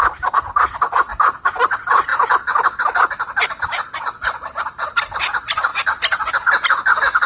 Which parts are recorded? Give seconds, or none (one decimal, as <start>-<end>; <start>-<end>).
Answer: 0.0-1.1; 1.6-7.3